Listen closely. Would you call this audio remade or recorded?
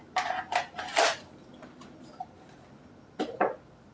recorded